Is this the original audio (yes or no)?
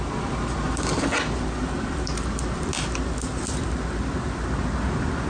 yes